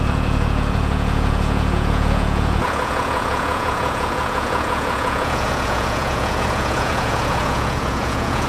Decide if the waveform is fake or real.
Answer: fake